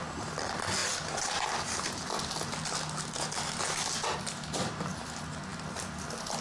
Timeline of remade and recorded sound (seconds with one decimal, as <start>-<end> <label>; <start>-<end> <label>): 0.0-6.4 recorded